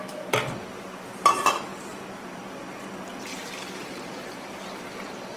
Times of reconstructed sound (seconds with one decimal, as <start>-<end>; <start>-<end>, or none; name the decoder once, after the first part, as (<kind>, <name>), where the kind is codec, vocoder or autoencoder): 1.9-2.4 (vocoder, BigVGAN v2); 3.3-4.9